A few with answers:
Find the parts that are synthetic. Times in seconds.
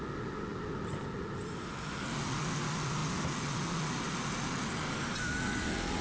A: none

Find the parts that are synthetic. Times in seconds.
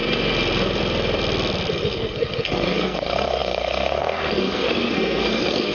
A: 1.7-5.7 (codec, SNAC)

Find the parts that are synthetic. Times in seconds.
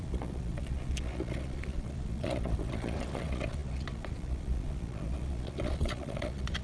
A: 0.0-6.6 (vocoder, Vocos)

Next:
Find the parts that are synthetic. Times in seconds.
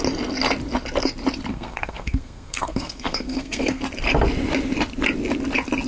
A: 1.5-3.8 (codec, SNAC)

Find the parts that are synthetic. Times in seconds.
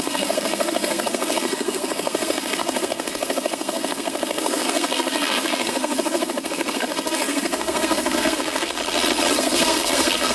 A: 0.0-8.8 (codec, SNAC); 9.3-10.3